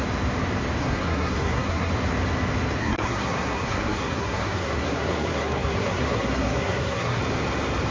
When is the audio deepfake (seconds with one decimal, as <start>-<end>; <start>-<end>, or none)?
0.8-1.9; 2.8-7.2